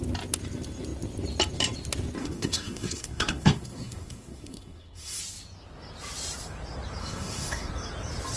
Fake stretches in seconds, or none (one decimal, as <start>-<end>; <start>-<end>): 2.2-5.2; 7.0-7.7

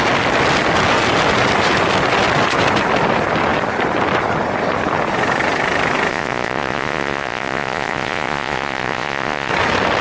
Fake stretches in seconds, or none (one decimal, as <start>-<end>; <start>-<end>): 6.1-9.5

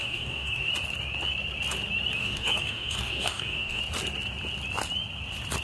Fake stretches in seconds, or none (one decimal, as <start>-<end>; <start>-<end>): 0.0-0.7; 2.2-3.8

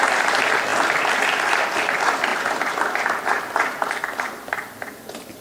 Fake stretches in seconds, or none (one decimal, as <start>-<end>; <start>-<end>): none

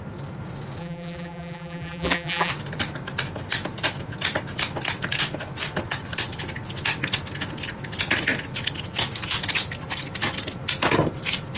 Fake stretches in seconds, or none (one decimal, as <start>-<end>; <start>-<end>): 0.8-2.5

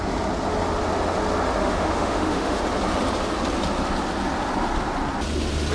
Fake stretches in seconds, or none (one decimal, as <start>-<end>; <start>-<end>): 1.6-2.6